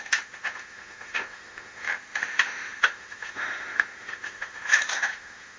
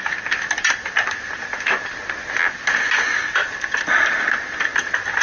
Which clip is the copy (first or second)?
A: first